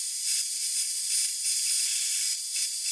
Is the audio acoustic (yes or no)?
yes